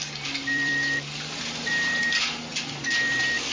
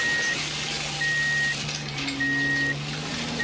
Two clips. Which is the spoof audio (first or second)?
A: first